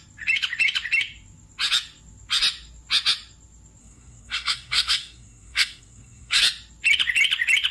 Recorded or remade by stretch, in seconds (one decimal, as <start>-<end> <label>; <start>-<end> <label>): 0.0-3.8 recorded; 3.8-6.4 remade; 6.4-7.7 recorded